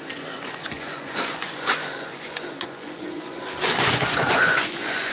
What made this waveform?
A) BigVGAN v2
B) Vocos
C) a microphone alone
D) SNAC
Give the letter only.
B